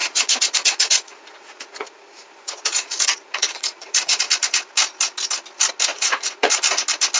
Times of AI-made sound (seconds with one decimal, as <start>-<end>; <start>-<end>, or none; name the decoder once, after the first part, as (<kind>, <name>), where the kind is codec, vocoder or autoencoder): 0.0-4.2 (vocoder, Vocos); 5.9-6.5